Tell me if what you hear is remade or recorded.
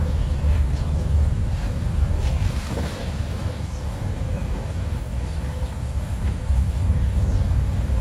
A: remade